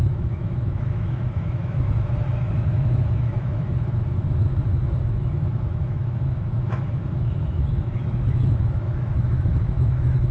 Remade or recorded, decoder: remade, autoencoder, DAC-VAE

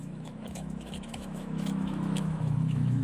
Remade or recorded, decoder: remade, autoencoder, DAC-VAE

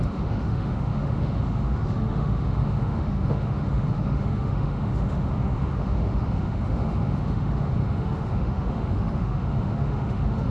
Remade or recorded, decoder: remade, autoencoder, DAC-VAE